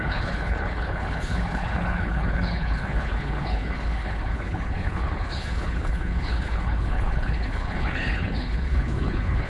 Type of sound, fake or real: fake